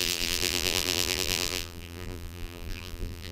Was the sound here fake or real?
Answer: fake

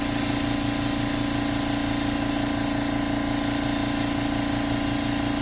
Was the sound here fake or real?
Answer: real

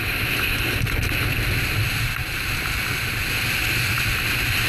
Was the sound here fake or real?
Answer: real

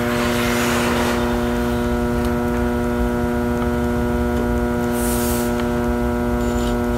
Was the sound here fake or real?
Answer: real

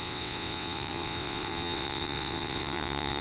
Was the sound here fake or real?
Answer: fake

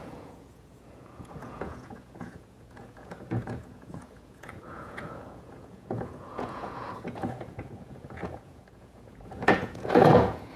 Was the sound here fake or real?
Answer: fake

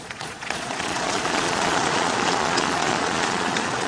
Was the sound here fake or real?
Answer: fake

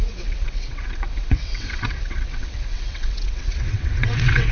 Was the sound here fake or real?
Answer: fake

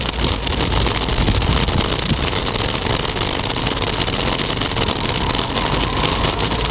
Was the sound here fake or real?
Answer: real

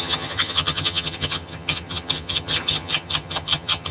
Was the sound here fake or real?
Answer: fake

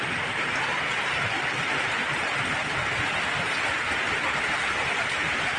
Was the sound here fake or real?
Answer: real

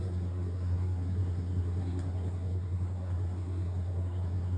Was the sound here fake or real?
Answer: fake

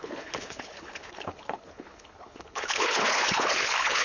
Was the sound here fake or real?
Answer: fake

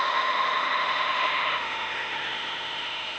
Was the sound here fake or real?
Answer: fake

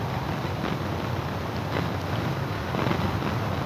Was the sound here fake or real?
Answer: real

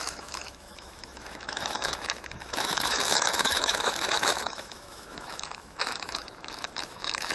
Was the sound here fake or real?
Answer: fake